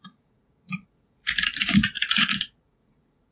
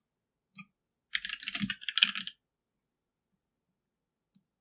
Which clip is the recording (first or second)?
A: second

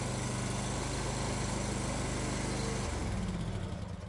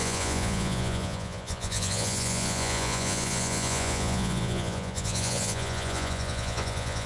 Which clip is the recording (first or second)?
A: first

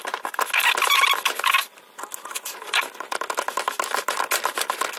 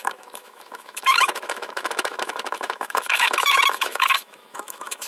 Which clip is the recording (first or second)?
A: first